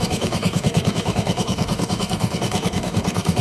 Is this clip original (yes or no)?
no